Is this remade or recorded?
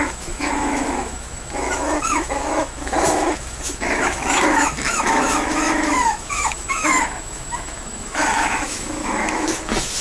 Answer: remade